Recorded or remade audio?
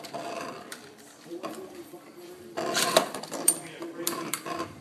remade